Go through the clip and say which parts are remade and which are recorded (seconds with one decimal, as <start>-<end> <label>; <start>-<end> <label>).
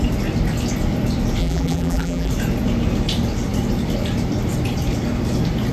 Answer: 0.0-1.4 recorded; 1.4-2.3 remade; 2.3-5.7 recorded